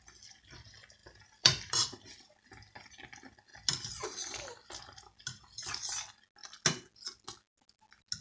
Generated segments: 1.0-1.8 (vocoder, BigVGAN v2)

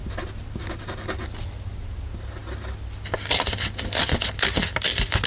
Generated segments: none

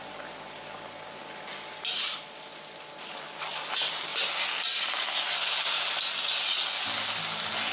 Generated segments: 1.2-1.8 (vocoder, BigVGAN v2)

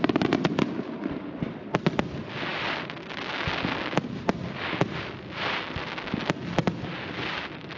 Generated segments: none

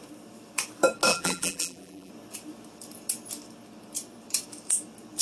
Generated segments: 1.1-2.1 (vocoder, BigVGAN v2)

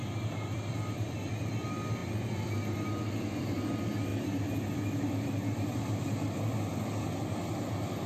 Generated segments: none

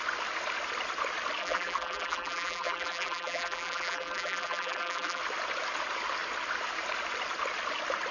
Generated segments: 1.4-5.2 (vocoder, BigVGAN v2)

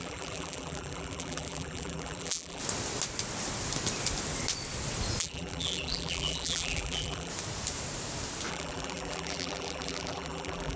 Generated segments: 0.0-2.6 (vocoder, BigVGAN v2); 5.2-7.3; 8.5-10.8